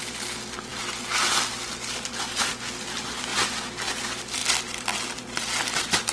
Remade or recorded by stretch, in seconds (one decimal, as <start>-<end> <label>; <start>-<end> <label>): 0.0-6.1 recorded